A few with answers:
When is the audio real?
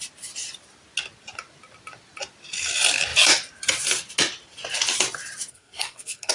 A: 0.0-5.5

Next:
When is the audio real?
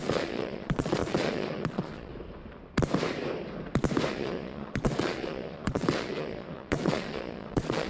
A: 2.1-4.1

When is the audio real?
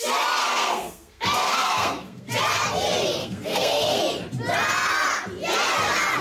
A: 0.0-0.4; 2.3-3.2; 4.0-6.2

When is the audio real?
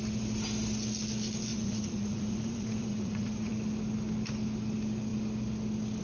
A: 0.0-1.5; 3.5-6.0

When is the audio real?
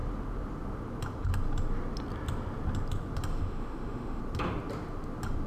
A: 0.0-3.3; 4.2-5.5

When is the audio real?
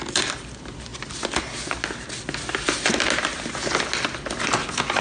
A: 0.0-5.0